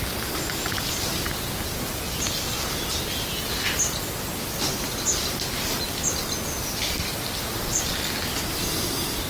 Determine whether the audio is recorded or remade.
recorded